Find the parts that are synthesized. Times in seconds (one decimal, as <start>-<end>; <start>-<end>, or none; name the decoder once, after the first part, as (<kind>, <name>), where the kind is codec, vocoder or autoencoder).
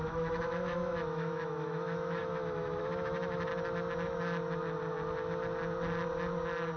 0.0-3.5 (autoencoder, DAC-VAE)